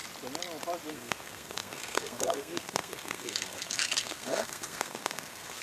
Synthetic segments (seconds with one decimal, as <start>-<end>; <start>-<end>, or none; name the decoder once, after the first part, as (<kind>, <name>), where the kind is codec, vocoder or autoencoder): 0.9-5.6 (codec, SNAC)